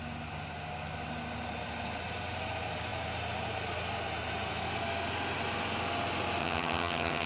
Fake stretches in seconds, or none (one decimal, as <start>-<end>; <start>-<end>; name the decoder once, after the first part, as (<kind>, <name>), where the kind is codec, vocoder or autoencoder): 6.4-7.3 (vocoder, HiFi-GAN)